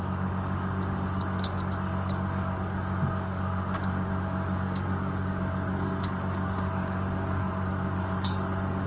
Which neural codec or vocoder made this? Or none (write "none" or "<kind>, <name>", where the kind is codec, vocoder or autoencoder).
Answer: codec, DAC